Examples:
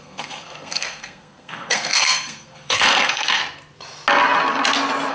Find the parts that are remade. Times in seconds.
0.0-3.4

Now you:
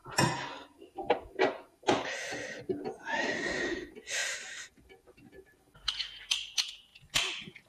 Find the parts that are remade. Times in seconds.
4.2-5.6

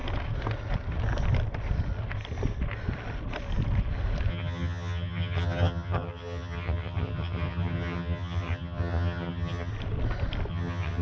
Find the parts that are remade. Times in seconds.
4.3-9.7; 10.5-11.0

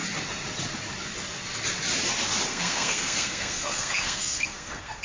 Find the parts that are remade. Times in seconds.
2.5-5.0

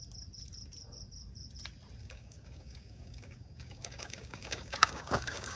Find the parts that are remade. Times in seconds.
2.0-5.6

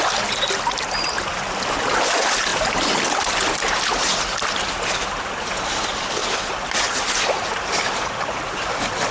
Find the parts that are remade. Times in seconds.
2.5-4.1; 6.2-6.8